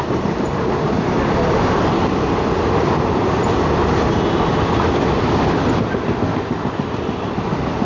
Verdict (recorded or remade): recorded